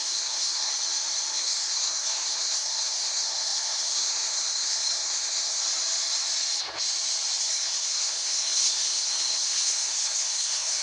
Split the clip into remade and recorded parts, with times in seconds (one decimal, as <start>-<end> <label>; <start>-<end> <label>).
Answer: 0.0-0.7 remade; 0.7-1.3 recorded; 1.3-5.6 remade; 5.6-7.4 recorded; 7.4-10.8 remade